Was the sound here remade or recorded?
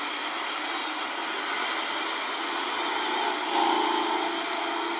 recorded